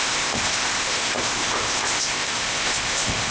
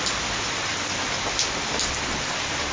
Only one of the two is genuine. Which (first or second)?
second